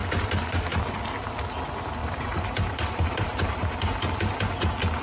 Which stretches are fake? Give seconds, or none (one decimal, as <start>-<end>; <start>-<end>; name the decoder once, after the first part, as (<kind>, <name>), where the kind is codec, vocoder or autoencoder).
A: 0.0-0.8 (vocoder, BigVGAN v2); 2.0-4.2